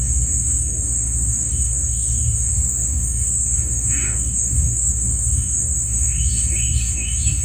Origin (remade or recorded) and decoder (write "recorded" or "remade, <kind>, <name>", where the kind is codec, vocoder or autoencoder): remade, codec, DAC